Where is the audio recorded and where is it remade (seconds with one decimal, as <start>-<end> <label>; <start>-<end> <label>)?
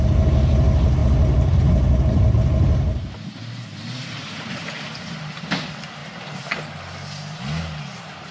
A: 0.0-8.3 recorded